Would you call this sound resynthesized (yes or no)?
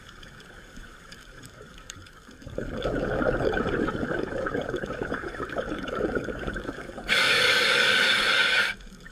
yes